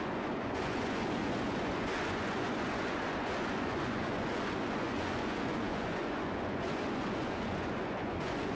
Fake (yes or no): yes